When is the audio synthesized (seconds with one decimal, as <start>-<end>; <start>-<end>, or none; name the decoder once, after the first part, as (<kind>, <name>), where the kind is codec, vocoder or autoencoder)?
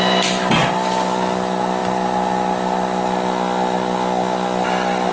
none